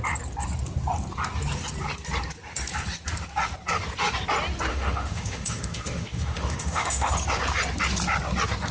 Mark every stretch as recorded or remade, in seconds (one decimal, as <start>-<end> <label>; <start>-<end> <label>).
0.0-4.7 recorded; 4.7-7.1 remade; 7.1-8.7 recorded